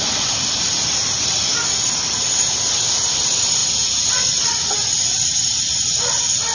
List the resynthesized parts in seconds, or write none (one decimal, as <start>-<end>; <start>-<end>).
none